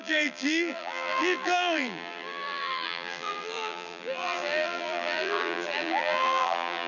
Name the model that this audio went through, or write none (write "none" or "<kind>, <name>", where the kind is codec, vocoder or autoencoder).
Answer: vocoder, BigVGAN v2